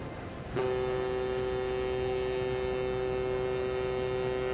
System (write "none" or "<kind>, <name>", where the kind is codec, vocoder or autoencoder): none